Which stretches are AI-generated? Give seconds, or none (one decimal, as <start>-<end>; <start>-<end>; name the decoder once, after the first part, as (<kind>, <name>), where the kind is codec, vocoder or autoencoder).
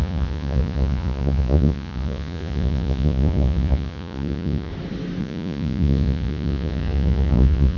0.0-4.7 (vocoder, Vocos); 5.2-7.8